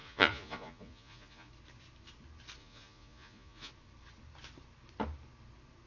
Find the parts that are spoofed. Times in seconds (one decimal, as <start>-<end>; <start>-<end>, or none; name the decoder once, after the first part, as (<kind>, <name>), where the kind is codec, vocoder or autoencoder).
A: 0.0-1.5 (vocoder, Vocos); 2.6-3.7